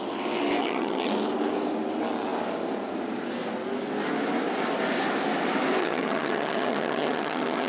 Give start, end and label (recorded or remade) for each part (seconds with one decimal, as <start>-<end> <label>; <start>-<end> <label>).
0.0-0.6 recorded; 0.6-1.1 remade; 1.1-5.8 recorded; 5.8-7.7 remade